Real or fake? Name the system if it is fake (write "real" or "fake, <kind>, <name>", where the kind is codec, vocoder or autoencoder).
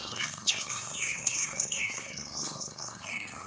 fake, codec, SNAC